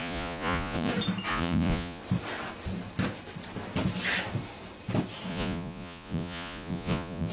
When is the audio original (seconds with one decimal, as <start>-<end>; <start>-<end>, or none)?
0.9-1.3; 2.0-5.3